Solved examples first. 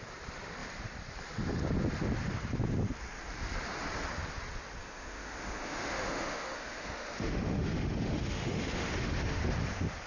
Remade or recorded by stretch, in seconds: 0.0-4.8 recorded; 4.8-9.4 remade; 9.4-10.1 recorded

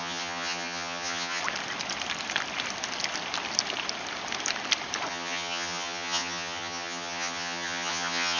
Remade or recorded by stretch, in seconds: 0.0-1.4 remade; 1.4-5.1 recorded; 5.1-8.4 remade

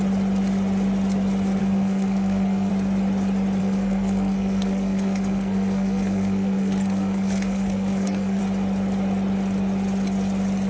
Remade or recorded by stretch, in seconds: 0.0-1.6 recorded; 1.6-2.7 remade; 2.7-3.6 recorded; 3.6-8.4 remade; 8.4-10.7 recorded

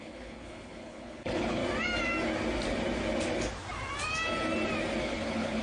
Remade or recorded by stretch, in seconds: 0.0-1.6 remade; 1.6-5.0 recorded; 5.0-5.6 remade